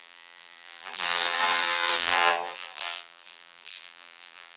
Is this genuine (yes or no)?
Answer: no